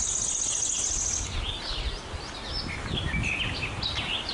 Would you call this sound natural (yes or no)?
yes